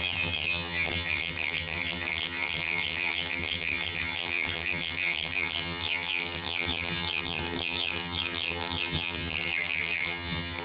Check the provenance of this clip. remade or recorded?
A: remade